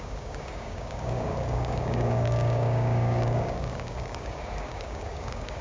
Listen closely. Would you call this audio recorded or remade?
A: remade